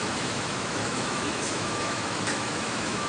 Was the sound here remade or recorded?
remade